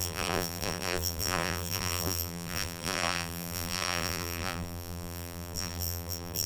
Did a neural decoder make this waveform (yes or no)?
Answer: yes